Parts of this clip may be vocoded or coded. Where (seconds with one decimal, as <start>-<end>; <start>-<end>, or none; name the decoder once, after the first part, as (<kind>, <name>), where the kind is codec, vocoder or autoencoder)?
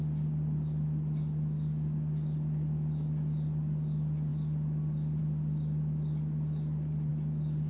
none